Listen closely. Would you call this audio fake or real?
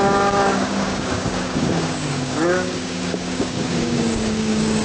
fake